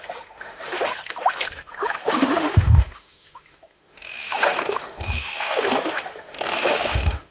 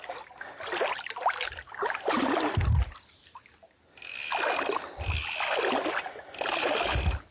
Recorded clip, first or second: second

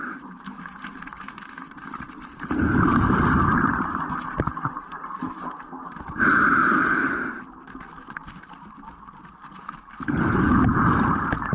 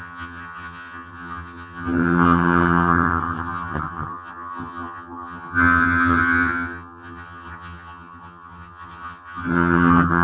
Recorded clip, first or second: first